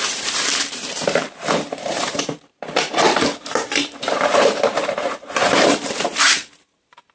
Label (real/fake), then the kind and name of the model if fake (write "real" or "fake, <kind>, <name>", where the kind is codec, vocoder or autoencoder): fake, vocoder, BigVGAN v2